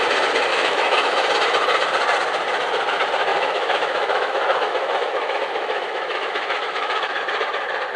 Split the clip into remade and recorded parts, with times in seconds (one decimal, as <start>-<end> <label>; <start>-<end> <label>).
0.0-0.5 recorded; 0.5-1.3 remade; 1.3-3.3 recorded; 3.3-7.2 remade; 7.2-8.0 recorded